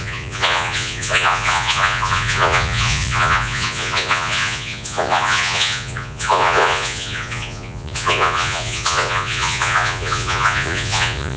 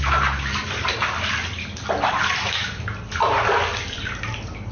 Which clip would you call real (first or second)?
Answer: second